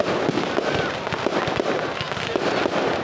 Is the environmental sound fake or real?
real